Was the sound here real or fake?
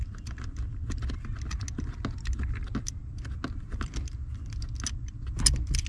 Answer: real